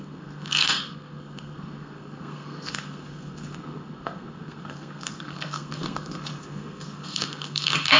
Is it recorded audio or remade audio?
remade